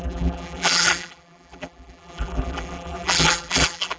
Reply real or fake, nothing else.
fake